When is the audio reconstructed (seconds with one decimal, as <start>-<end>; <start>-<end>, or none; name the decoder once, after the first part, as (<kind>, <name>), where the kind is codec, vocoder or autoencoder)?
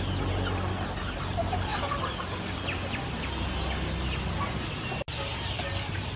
none